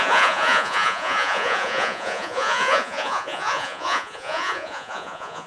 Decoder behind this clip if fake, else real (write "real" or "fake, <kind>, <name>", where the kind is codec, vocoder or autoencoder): fake, vocoder, Vocos